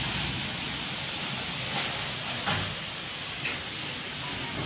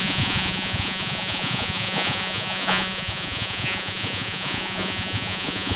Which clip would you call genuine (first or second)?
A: first